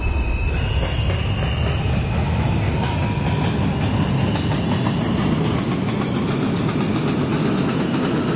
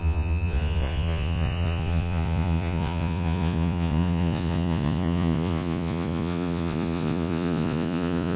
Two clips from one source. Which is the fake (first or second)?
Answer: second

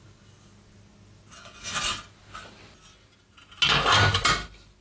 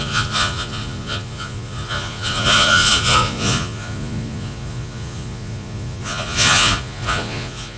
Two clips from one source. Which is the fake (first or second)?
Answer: second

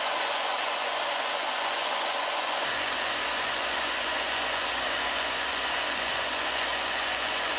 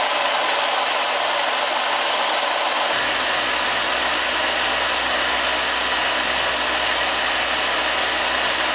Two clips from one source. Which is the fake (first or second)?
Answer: first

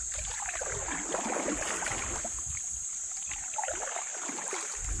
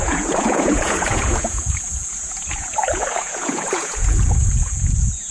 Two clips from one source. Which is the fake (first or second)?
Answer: second